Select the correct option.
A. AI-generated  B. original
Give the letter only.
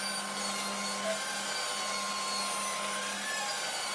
B